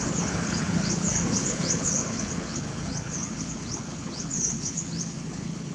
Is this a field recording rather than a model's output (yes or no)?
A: no